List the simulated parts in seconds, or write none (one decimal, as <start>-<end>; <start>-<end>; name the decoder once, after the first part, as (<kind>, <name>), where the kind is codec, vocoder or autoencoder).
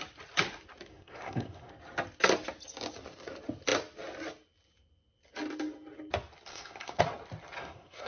0.9-1.7 (codec, SNAC); 6.5-7.0; 7.6-8.1